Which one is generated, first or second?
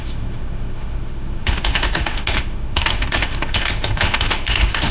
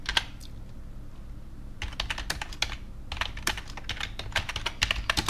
first